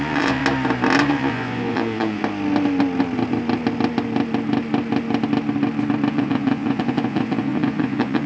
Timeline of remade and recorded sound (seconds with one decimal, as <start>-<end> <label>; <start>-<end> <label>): 0.0-0.4 remade; 0.4-1.1 recorded; 1.1-2.2 remade; 2.2-6.1 recorded; 6.1-8.3 remade